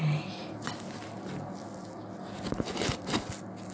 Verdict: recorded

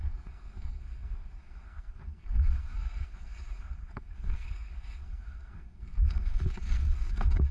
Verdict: remade